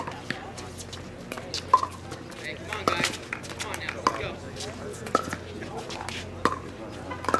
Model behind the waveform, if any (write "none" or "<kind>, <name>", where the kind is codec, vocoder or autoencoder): none